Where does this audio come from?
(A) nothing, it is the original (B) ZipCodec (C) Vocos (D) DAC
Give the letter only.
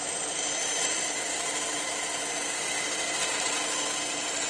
A